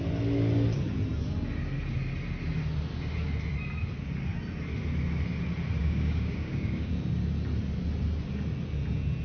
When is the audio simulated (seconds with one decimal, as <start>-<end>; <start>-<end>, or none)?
5.8-6.9